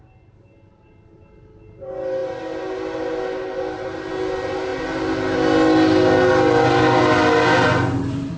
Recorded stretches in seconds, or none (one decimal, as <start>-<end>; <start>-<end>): 0.0-8.4